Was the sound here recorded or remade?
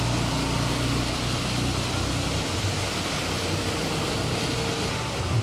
recorded